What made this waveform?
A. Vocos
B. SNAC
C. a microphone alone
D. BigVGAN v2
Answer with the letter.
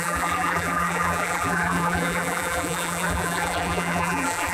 D